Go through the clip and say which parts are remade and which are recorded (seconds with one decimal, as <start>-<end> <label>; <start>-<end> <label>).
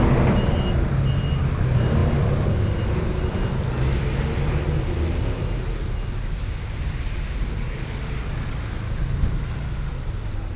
0.0-10.6 recorded